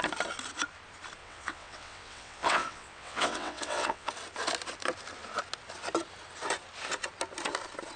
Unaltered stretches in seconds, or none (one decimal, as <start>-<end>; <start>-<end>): 0.0-1.2; 4.1-8.0